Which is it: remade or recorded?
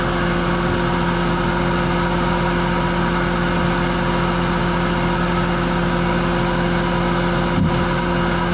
recorded